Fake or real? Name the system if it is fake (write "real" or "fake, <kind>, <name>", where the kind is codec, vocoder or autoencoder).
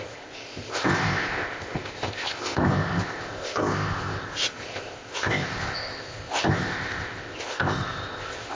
fake, codec, ZipCodec